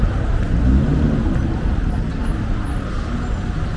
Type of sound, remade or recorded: recorded